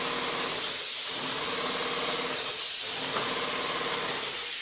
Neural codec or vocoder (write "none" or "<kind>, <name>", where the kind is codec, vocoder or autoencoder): none